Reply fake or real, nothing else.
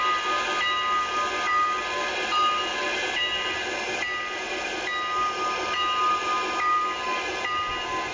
real